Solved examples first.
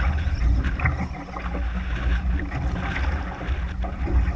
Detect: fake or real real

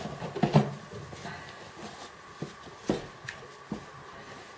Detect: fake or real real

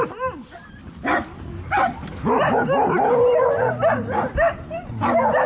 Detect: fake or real real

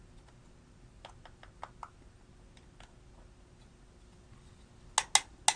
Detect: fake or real real